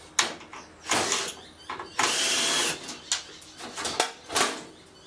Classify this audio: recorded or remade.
recorded